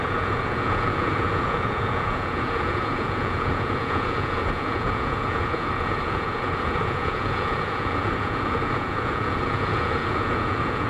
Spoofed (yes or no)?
yes